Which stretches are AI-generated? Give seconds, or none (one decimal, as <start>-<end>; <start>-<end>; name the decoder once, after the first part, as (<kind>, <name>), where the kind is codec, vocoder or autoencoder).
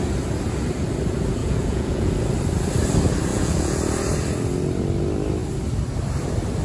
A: 1.4-2.1 (vocoder, Vocos); 3.3-3.8